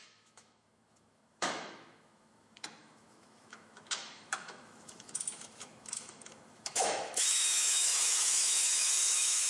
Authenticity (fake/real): fake